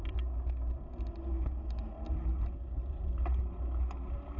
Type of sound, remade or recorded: recorded